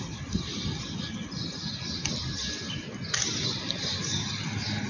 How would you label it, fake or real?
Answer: real